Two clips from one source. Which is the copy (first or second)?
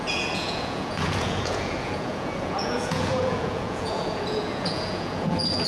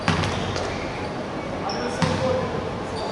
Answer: first